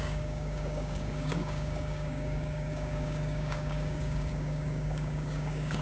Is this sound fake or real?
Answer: fake